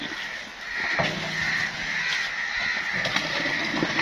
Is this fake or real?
real